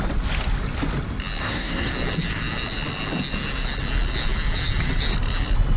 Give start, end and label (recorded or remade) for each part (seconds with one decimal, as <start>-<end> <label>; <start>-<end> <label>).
0.0-1.4 recorded; 1.4-1.9 remade; 1.9-5.8 recorded